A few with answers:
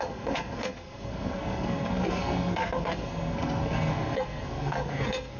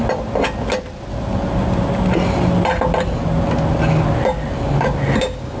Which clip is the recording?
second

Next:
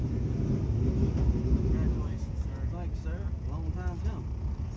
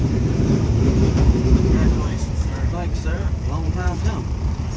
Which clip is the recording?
first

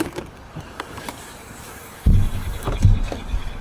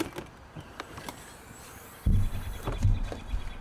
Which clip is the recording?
second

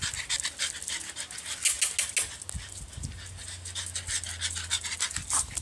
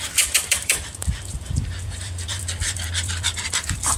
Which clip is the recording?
first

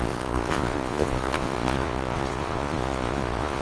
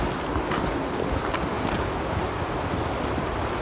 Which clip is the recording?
second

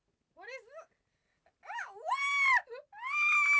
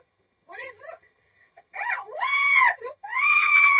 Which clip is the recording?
first